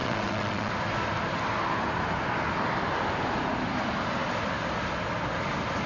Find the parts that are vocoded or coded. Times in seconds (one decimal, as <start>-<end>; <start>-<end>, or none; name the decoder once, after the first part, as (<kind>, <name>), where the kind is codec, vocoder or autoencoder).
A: 0.0-0.7 (vocoder, WaveNeXt)

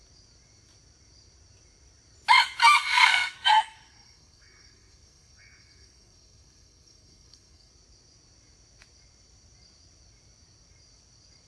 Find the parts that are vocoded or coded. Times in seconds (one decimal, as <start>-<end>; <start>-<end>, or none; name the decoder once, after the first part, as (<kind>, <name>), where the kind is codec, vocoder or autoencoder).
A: 2.6-7.7 (codec, SNAC)